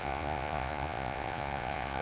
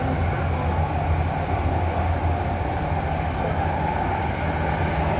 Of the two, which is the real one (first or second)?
second